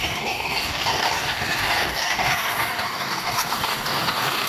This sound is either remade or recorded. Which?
remade